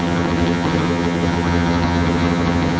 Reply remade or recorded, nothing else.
remade